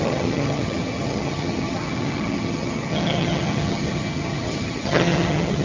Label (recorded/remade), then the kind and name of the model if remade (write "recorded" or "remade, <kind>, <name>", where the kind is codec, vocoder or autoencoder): remade, vocoder, HiFi-GAN